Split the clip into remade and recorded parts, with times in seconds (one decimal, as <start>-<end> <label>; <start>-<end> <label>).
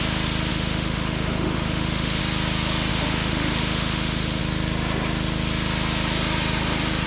0.0-0.5 recorded; 0.5-2.2 remade; 2.2-2.9 recorded; 2.9-4.4 remade; 4.4-7.1 recorded